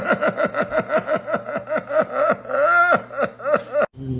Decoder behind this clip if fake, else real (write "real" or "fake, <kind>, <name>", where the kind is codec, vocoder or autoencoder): real